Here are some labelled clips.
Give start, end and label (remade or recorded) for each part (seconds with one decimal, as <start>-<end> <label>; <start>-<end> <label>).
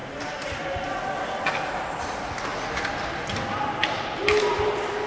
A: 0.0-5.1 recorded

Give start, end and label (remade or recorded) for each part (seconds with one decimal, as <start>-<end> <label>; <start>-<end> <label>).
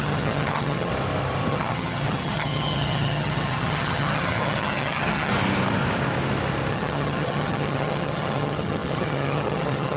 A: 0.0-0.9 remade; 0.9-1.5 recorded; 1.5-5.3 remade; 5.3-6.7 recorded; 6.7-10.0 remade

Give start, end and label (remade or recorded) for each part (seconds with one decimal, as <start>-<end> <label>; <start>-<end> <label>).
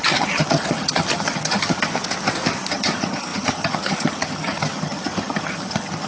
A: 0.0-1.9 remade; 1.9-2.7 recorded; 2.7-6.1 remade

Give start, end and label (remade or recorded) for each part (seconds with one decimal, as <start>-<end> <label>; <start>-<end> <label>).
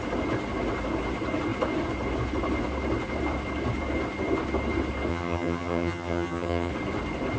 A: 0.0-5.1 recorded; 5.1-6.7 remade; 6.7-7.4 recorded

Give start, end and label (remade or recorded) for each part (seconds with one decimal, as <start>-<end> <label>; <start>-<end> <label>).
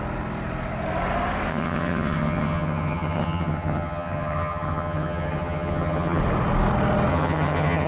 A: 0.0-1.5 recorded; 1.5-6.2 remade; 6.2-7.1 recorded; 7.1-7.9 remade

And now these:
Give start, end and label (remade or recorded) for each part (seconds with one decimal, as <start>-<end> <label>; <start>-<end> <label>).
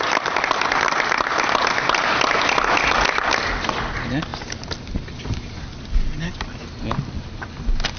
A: 0.0-8.0 recorded